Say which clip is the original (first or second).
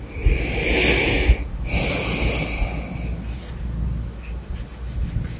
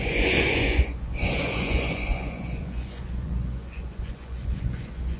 first